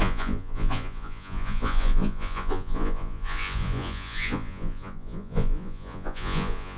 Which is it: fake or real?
fake